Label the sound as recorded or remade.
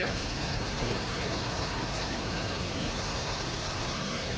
remade